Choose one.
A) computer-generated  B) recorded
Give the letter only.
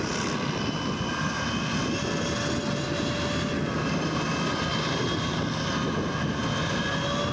B